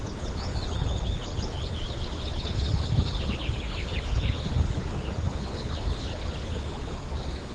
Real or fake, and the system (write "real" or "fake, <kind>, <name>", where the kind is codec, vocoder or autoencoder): fake, codec, HILCodec